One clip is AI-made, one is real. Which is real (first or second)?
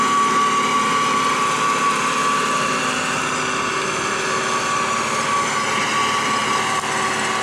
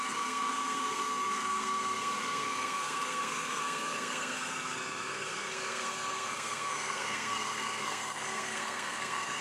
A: first